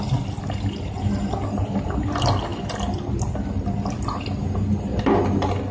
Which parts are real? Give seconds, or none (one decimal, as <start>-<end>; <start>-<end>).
0.0-5.7